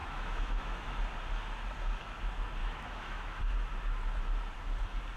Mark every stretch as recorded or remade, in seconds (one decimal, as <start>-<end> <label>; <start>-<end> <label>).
0.0-1.0 remade; 1.0-2.6 recorded; 2.6-3.4 remade; 3.4-5.2 recorded